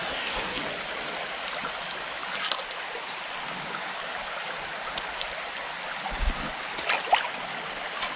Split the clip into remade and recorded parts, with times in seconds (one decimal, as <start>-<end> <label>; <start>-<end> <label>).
0.0-0.6 remade; 0.6-8.2 recorded